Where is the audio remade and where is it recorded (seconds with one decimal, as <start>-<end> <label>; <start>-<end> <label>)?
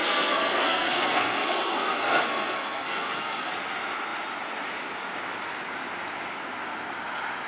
0.0-3.5 remade; 3.5-7.5 recorded